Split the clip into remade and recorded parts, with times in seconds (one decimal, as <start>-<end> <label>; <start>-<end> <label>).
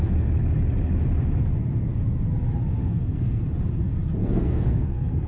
0.0-2.8 recorded; 2.8-3.4 remade; 3.4-4.2 recorded; 4.2-5.3 remade